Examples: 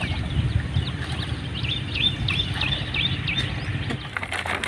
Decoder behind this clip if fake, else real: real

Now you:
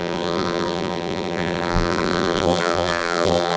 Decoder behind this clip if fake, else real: fake, vocoder, BigVGAN v2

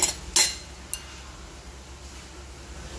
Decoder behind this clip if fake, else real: real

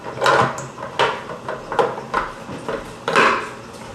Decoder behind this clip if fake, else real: real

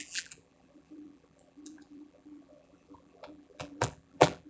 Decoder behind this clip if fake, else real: fake, vocoder, BigVGAN v2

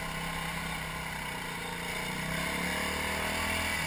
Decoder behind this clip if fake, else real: real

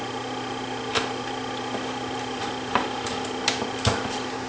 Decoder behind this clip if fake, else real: real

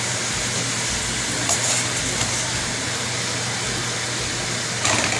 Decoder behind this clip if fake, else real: real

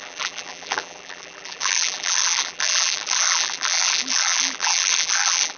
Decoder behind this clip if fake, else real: fake, vocoder, BigVGAN v2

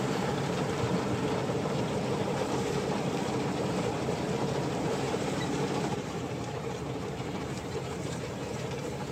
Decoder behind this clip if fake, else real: fake, vocoder, BigVGAN v2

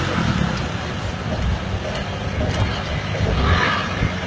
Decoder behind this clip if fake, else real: real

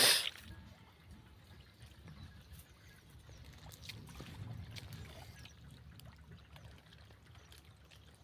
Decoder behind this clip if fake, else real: real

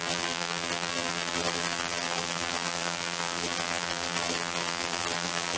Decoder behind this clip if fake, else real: fake, vocoder, BigVGAN v2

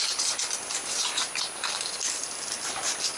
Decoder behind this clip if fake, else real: real